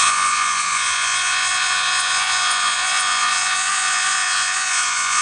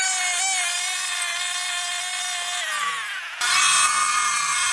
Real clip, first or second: second